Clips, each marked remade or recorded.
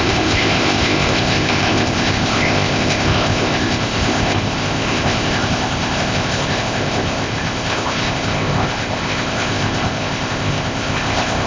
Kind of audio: remade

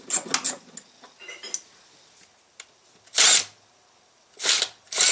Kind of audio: recorded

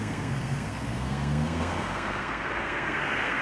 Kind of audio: remade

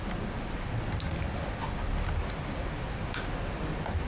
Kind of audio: recorded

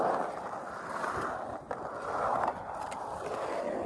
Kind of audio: recorded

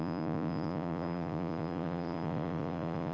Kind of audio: remade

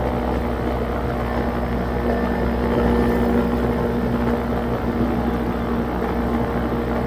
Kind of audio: recorded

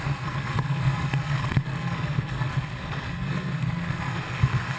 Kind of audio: remade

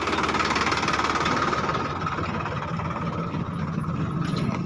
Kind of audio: recorded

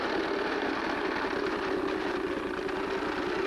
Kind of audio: recorded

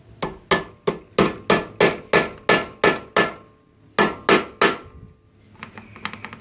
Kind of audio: recorded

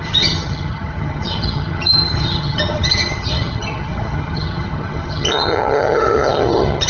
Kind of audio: remade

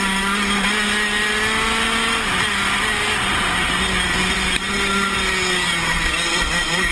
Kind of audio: recorded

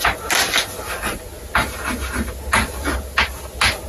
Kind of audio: recorded